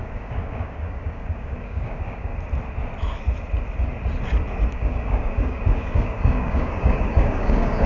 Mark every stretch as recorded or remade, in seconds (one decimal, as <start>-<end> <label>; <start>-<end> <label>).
0.0-2.3 remade; 2.3-4.7 recorded; 4.7-7.9 remade